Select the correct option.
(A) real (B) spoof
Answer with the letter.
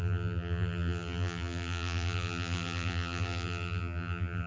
B